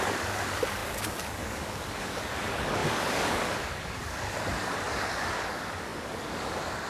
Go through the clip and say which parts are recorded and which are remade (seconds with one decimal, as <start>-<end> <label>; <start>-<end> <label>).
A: 0.0-6.9 remade